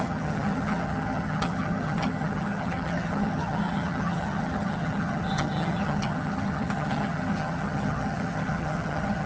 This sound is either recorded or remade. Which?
remade